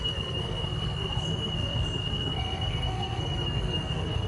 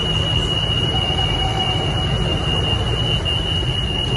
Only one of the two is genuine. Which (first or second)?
second